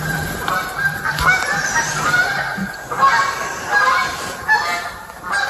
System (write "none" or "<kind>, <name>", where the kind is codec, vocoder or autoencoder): vocoder, BigVGAN v2